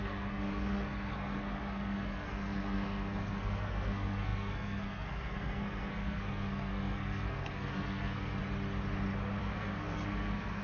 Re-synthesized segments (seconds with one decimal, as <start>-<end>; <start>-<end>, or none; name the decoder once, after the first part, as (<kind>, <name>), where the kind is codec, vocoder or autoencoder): 0.0-8.4 (codec, SNAC); 9.4-10.6